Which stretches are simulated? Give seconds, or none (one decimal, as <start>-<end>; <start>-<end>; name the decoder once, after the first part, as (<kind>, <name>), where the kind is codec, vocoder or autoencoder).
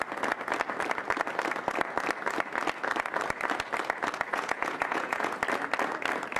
4.3-5.4 (vocoder, Vocos)